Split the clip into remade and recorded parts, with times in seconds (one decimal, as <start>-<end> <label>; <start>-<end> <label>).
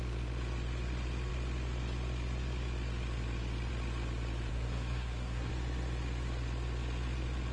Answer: 0.0-4.5 recorded; 4.5-5.5 remade; 5.5-7.5 recorded